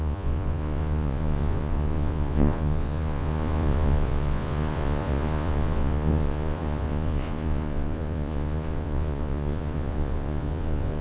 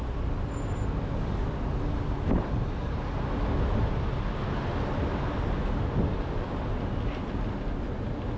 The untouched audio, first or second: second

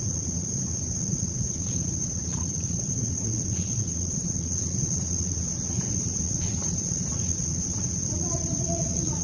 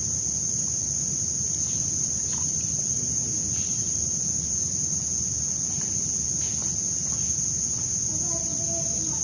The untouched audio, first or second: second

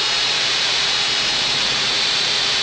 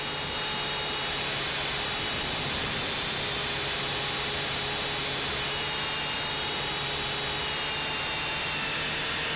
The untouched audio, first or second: second